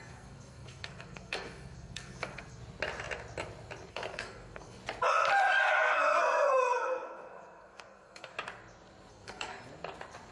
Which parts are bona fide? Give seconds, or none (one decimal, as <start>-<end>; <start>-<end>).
2.6-3.9; 4.8-5.7; 8.3-9.1; 9.5-10.3